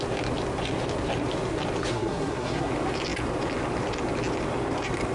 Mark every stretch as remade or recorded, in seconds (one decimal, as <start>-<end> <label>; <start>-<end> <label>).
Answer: 0.0-1.9 recorded; 1.9-2.7 remade; 2.7-5.1 recorded